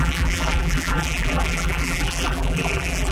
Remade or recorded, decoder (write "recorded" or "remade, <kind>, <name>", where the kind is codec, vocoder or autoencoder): remade, vocoder, BigVGAN v2